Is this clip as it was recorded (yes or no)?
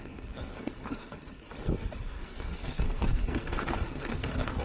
no